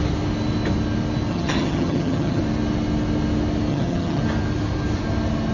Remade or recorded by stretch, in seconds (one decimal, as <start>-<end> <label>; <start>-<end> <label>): 0.0-1.3 recorded; 1.3-2.4 remade; 2.4-3.7 recorded; 3.7-4.2 remade; 4.2-5.5 recorded